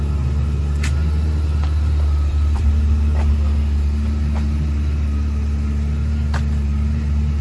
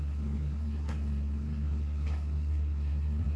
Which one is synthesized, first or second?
second